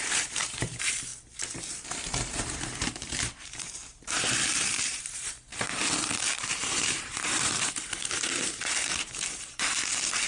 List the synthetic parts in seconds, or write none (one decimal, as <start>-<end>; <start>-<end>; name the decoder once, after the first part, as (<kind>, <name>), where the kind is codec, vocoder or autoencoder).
0.0-1.1 (vocoder, BigVGAN v2); 1.7-10.3